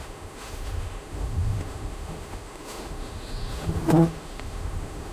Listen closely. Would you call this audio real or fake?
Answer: fake